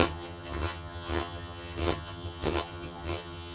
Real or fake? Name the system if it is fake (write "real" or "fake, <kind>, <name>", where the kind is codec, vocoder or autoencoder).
fake, vocoder, HiFi-GAN